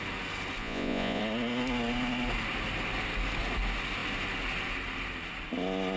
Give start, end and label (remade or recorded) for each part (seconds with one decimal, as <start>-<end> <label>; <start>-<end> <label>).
0.0-0.6 recorded; 0.6-1.2 remade; 1.2-6.0 recorded